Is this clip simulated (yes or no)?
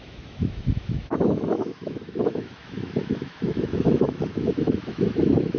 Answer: yes